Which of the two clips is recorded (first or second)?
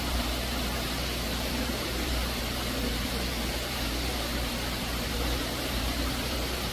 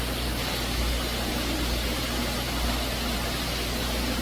second